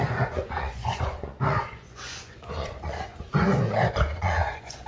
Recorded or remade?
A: remade